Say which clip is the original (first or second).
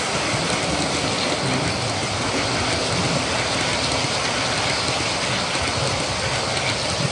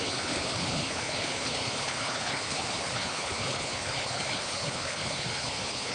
first